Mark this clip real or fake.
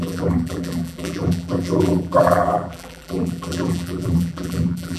fake